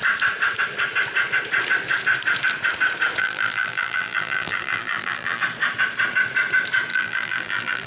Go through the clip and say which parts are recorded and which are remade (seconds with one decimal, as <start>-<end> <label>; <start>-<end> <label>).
0.0-3.2 recorded; 3.2-5.4 remade; 5.4-6.9 recorded; 6.9-7.9 remade